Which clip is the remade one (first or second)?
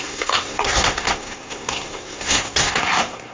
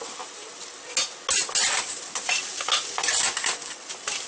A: first